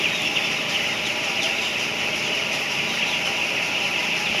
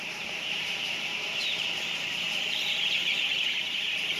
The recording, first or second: first